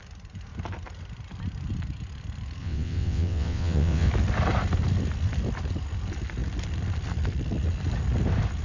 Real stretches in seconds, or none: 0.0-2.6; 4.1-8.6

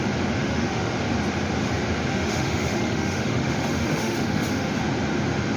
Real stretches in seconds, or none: 0.0-0.4; 0.9-2.1; 4.7-5.6

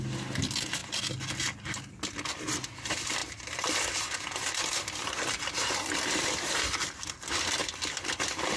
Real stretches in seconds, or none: 0.0-8.6

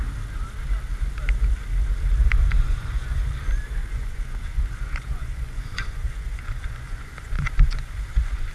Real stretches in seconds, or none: 0.0-2.2; 3.3-3.8

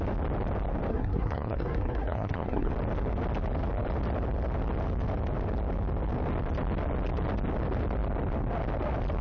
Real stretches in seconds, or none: 0.0-0.9; 2.7-9.2